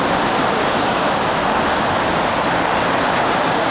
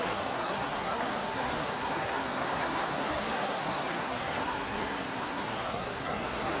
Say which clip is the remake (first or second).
second